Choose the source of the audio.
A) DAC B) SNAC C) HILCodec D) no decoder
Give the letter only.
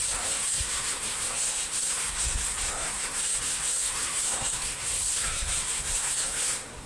B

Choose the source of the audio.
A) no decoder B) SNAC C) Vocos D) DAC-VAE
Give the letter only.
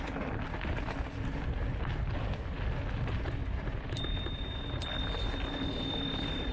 A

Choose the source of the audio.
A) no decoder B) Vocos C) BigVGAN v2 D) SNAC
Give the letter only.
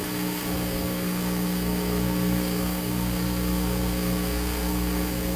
D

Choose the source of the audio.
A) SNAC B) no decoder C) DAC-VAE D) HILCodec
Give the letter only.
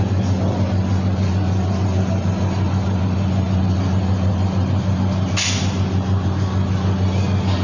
B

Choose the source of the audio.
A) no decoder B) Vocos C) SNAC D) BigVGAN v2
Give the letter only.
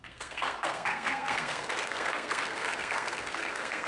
C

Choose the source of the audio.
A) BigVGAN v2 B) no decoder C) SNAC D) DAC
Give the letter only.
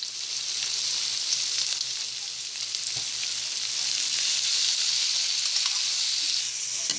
B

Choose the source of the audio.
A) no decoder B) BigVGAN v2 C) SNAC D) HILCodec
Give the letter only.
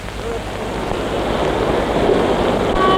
A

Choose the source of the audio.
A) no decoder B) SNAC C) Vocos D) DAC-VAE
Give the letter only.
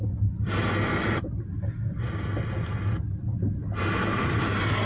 A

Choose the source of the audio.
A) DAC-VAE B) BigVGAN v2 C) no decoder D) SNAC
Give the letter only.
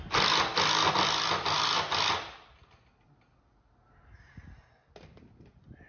C